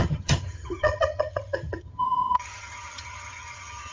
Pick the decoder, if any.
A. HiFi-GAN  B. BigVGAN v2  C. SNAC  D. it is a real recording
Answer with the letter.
A